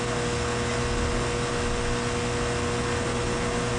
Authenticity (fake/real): real